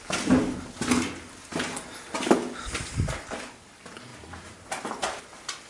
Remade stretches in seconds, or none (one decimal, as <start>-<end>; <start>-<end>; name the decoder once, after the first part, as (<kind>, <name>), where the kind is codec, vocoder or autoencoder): 4.1-5.2 (vocoder, BigVGAN v2)